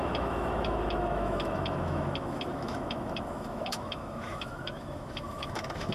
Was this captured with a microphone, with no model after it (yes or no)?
no